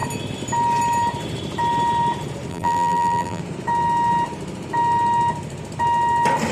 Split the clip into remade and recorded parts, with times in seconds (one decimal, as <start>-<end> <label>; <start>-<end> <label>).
0.0-2.5 recorded; 2.5-3.4 remade; 3.4-6.5 recorded